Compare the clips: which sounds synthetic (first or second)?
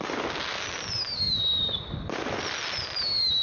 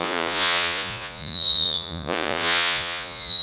second